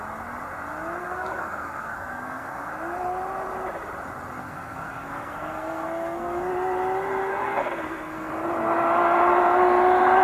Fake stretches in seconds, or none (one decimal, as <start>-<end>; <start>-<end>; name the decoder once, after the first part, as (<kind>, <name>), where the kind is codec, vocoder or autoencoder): 1.0-2.7 (codec, SNAC); 4.4-6.5; 7.2-8.3